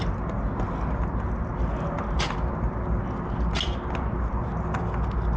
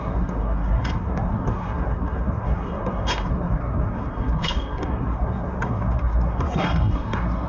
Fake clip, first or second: second